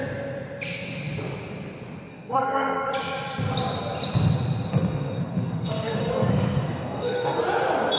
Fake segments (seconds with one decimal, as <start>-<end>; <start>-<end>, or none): 2.1-2.9; 4.7-7.4